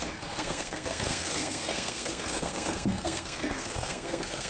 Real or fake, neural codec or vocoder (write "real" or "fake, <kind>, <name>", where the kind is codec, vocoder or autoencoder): fake, codec, SNAC